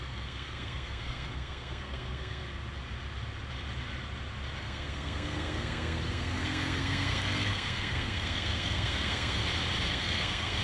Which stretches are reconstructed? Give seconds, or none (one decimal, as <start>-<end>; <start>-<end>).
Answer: 0.0-2.4; 4.6-9.4; 9.9-10.6